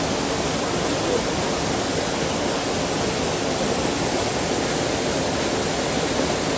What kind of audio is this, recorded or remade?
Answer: recorded